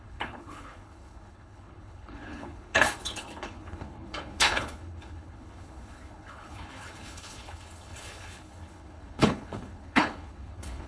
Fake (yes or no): yes